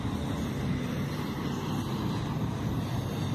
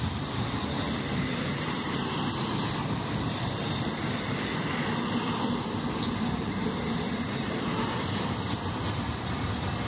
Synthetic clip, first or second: second